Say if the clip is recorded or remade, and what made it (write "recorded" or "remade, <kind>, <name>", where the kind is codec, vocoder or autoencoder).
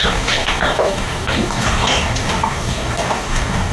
remade, codec, DAC